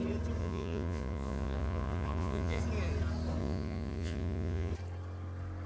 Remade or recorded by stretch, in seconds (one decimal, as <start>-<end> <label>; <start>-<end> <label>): 0.0-0.4 recorded; 0.4-2.6 remade; 2.6-3.4 recorded; 3.4-4.7 remade; 4.7-5.7 recorded